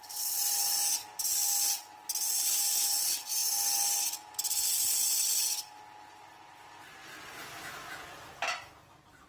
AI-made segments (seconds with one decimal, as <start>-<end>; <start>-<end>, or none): 7.4-8.3